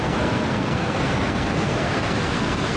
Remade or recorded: remade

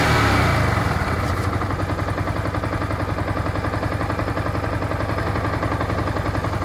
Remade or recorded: recorded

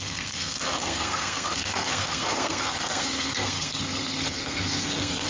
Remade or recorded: remade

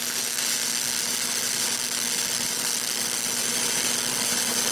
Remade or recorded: recorded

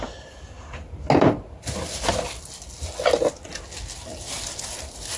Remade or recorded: recorded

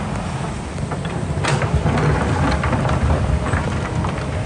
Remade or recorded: recorded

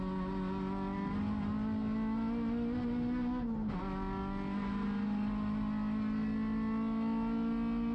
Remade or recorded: recorded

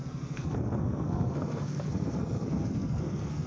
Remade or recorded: remade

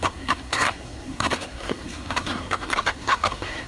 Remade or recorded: remade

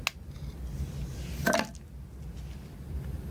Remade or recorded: recorded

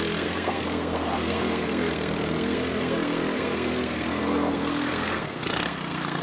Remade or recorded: remade